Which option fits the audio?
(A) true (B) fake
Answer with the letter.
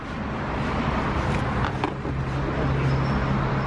A